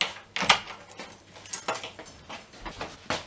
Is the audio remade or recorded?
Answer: recorded